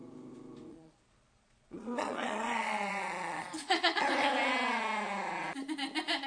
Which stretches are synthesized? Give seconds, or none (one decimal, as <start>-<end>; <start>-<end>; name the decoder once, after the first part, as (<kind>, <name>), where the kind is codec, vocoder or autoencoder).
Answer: 0.7-4.1 (vocoder, Vocos)